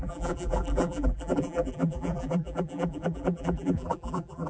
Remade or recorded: remade